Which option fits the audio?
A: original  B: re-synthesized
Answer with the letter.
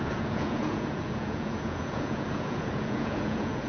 B